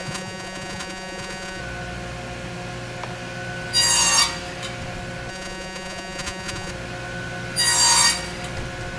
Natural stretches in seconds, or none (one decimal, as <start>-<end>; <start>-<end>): 1.6-5.3; 6.7-9.0

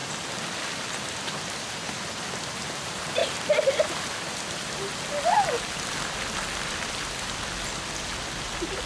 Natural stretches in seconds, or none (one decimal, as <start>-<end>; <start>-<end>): 0.0-2.5; 3.2-4.5; 4.9-8.9

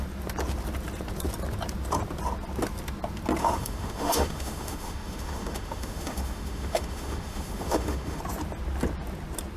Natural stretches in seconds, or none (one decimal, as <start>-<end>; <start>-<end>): 0.0-3.4; 8.2-9.6

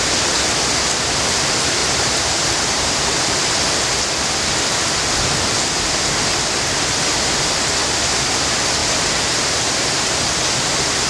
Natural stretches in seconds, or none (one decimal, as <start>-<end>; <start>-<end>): 0.0-1.8; 3.6-8.8; 10.2-11.1